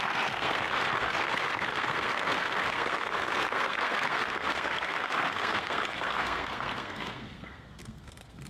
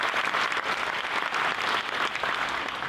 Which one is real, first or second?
second